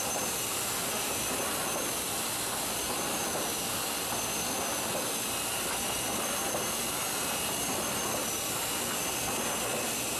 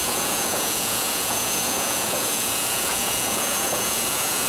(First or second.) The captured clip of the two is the first